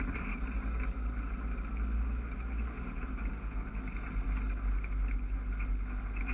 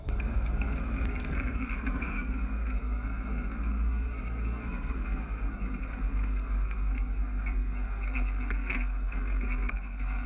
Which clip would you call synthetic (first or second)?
second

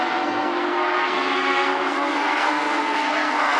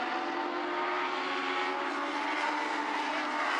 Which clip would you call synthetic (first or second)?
first